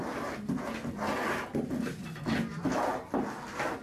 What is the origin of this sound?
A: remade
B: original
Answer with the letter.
B